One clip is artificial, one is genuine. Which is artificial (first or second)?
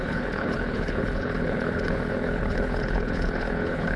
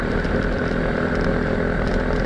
first